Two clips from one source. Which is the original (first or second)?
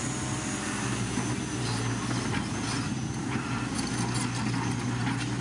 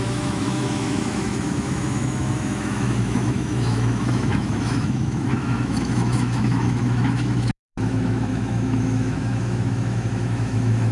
first